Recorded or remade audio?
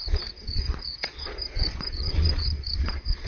remade